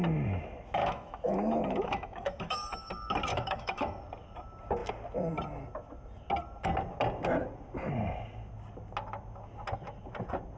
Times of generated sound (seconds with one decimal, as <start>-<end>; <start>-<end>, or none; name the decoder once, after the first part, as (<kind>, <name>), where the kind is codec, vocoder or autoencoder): 0.8-2.9 (autoencoder, DAC-VAE); 3.3-4.0